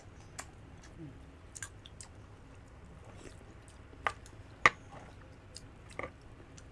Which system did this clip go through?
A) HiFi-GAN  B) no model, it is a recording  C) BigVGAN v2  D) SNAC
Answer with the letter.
B